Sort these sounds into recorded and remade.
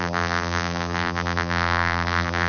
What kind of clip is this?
remade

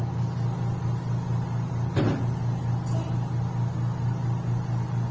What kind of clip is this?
recorded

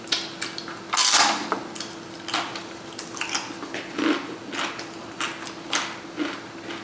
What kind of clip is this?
recorded